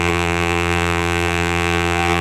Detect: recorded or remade remade